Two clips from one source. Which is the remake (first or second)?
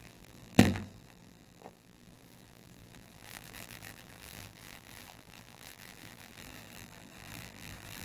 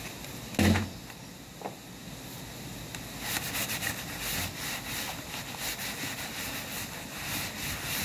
first